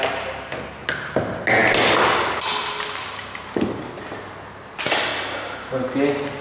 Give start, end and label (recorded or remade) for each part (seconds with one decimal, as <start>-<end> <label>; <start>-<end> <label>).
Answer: 0.0-6.4 recorded